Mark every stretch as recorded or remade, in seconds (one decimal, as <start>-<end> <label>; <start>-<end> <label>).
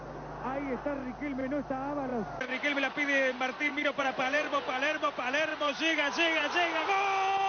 0.0-3.7 recorded; 3.7-5.1 remade; 5.1-5.5 recorded; 5.5-6.8 remade; 6.8-7.5 recorded